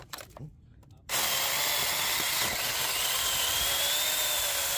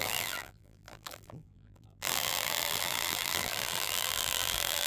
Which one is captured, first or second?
first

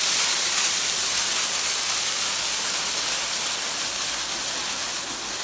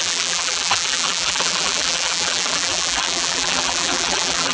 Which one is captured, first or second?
first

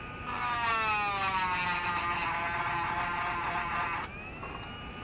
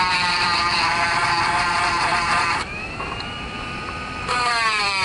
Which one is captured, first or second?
first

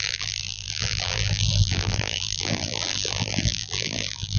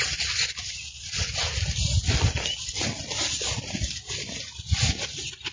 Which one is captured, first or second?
second